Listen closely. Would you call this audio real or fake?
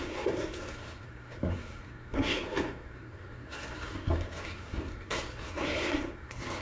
fake